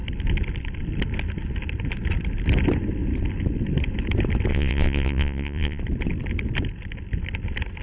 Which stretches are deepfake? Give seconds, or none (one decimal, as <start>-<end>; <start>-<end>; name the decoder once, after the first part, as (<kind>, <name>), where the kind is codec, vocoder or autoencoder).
4.5-5.8 (vocoder, WaveNeXt)